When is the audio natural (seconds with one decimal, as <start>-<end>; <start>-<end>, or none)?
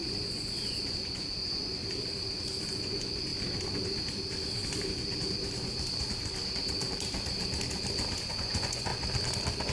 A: 1.8-2.7; 3.3-8.3; 8.9-9.7